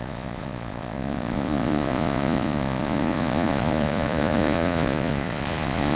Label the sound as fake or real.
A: fake